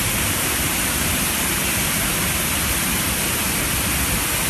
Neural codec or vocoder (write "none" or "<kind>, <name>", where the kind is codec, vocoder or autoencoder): none